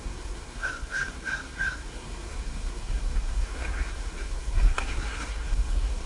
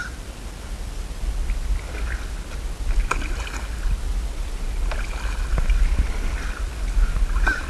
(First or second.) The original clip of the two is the second